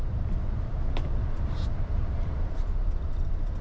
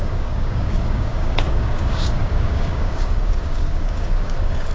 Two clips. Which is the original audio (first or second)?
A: first